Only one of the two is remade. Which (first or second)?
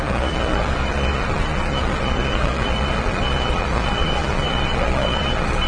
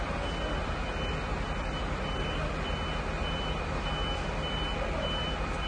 first